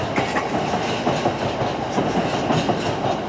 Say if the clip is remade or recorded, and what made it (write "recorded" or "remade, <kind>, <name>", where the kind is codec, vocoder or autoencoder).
recorded